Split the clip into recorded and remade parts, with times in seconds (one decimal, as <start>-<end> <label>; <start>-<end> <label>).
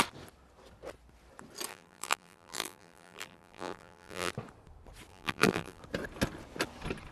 0.0-1.7 recorded; 1.7-4.3 remade; 4.3-5.1 recorded; 5.1-5.8 remade; 5.8-7.1 recorded